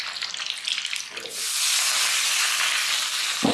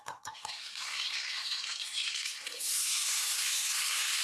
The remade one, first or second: second